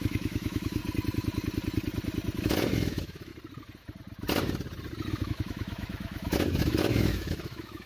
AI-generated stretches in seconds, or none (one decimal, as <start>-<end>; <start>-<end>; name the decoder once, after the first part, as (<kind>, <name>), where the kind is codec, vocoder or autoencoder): 0.0-0.8 (autoencoder, DAC-VAE); 2.4-3.3; 5.1-7.9